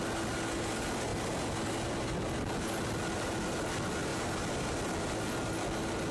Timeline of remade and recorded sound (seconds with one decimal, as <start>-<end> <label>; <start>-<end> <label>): 0.0-6.1 recorded